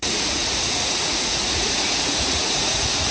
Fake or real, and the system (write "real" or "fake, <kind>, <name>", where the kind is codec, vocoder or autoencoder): fake, vocoder, Vocos